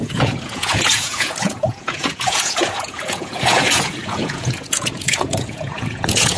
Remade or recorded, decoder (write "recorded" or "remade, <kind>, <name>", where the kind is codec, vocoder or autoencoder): remade, vocoder, Vocos